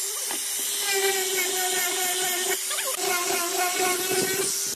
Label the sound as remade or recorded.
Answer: recorded